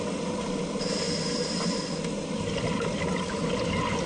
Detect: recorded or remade recorded